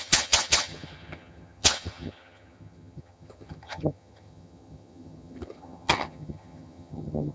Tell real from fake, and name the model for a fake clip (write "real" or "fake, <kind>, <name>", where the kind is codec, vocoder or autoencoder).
fake, vocoder, HiFi-GAN